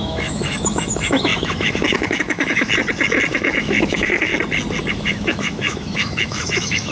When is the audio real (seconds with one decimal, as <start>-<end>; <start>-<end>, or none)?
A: 2.7-3.3; 4.3-4.9